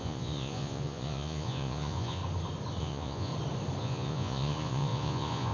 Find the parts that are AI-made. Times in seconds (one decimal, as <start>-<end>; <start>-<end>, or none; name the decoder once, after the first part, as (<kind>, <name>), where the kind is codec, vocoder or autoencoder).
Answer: 0.0-2.2 (vocoder, Vocos); 2.8-3.3; 3.8-5.5